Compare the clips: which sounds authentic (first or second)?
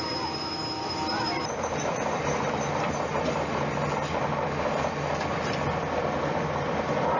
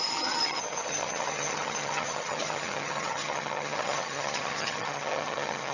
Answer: first